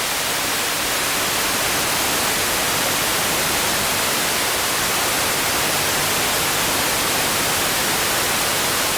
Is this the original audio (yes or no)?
yes